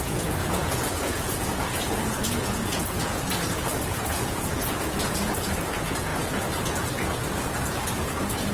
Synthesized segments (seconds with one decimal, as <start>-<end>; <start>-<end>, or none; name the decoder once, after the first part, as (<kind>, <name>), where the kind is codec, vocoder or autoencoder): 0.0-8.5 (vocoder, Vocos)